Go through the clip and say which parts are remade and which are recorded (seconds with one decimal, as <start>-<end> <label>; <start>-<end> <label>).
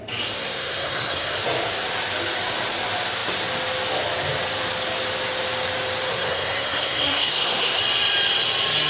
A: 0.0-0.4 recorded; 0.4-1.4 remade; 1.4-6.1 recorded; 6.1-7.8 remade; 7.8-8.9 recorded